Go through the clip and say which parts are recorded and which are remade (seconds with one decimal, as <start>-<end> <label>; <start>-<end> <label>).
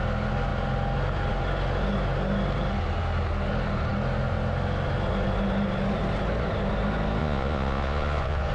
0.0-7.2 recorded; 7.2-8.5 remade